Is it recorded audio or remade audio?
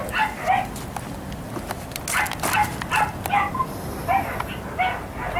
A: recorded